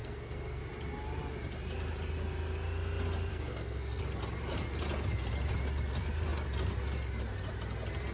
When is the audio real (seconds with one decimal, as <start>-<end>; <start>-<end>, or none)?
0.6-3.3; 4.0-8.1